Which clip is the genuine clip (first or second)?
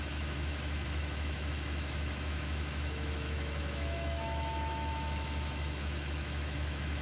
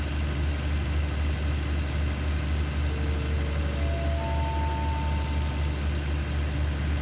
second